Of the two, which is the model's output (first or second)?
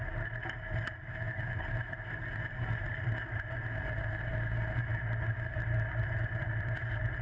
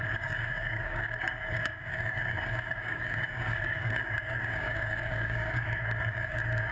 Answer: second